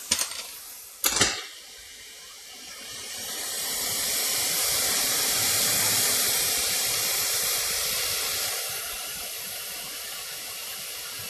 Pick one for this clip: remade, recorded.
remade